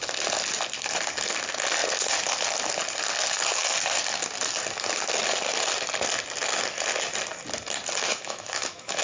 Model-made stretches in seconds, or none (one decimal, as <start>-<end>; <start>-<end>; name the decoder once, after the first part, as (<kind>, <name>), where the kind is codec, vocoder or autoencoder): 8.1-9.0 (autoencoder, DAC-VAE)